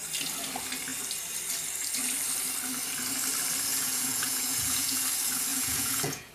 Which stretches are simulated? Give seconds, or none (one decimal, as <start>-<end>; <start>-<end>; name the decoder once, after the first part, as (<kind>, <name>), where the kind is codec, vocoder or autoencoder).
3.7-5.0 (vocoder, Vocos); 5.5-6.3